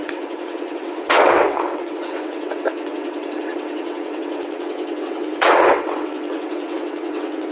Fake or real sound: fake